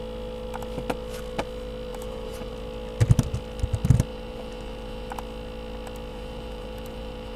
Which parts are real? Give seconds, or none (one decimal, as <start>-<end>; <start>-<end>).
0.0-1.9; 2.5-4.1; 5.1-6.1